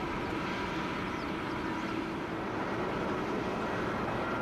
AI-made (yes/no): no